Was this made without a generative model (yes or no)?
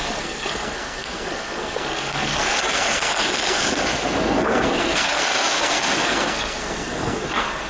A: no